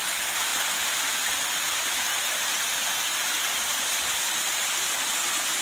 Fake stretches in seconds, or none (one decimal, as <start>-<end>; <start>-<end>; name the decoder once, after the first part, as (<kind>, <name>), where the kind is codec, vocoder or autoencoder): 0.5-1.1 (vocoder, BigVGAN v2); 2.1-5.6